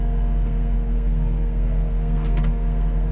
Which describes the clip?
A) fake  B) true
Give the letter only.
A